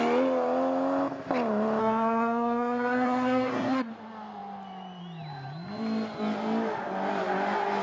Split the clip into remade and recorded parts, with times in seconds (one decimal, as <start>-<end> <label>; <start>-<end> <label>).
0.0-1.8 recorded; 1.8-3.9 remade; 3.9-7.8 recorded